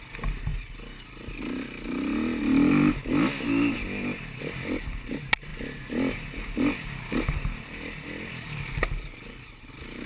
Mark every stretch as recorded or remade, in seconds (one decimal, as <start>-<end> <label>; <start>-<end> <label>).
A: 0.0-10.1 recorded